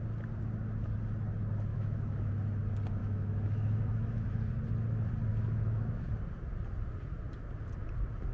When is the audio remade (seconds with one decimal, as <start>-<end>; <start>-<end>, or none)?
1.7-2.3; 3.0-4.3; 5.3-6.1

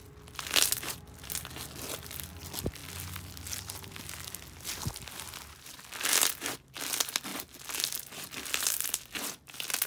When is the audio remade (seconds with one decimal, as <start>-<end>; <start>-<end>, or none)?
none